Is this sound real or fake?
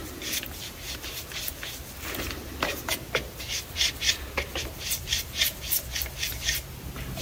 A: real